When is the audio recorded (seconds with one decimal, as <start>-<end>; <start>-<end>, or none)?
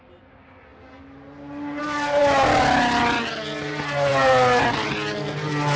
0.0-5.8